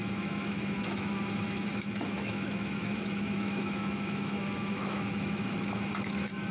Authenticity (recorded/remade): remade